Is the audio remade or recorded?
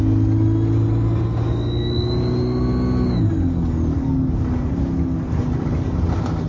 recorded